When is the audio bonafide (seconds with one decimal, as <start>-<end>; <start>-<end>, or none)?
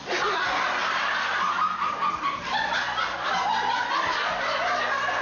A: 0.0-5.2